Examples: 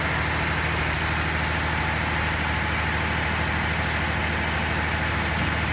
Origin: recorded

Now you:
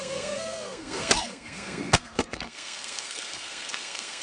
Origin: remade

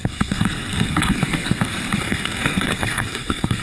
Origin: remade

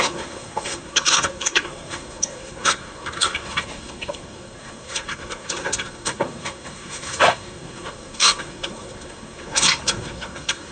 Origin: remade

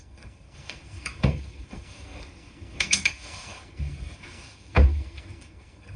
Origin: remade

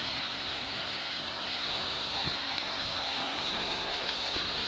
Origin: remade